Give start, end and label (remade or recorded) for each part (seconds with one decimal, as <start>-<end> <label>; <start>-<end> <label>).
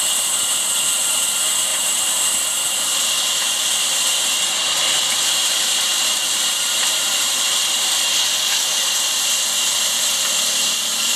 0.0-1.7 recorded; 1.7-2.4 remade; 2.4-5.4 recorded; 5.4-8.0 remade; 8.0-11.2 recorded